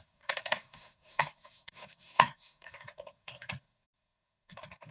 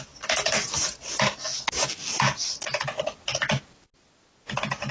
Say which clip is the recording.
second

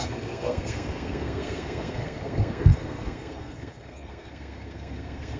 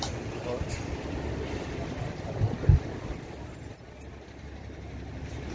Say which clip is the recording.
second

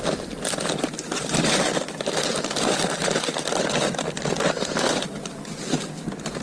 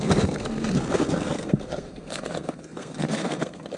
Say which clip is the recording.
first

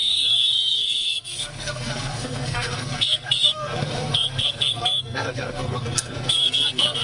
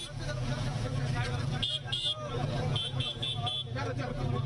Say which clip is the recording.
second